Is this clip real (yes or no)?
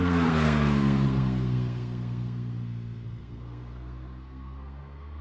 no